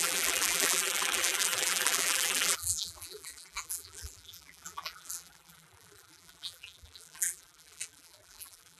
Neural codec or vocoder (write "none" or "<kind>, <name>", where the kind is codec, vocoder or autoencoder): vocoder, BigVGAN v2